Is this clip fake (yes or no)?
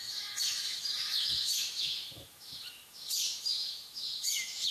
yes